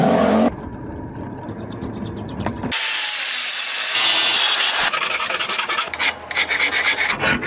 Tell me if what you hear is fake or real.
real